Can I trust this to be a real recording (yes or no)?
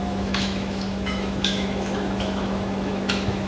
no